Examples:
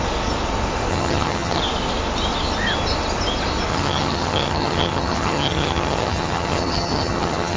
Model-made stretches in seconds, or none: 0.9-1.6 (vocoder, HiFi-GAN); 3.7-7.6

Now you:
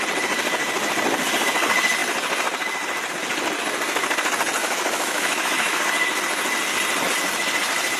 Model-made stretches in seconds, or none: 4.6-5.8 (autoencoder, DAC-VAE)

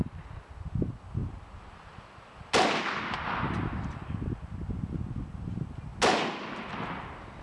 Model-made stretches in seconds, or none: none